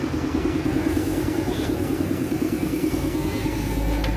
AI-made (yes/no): yes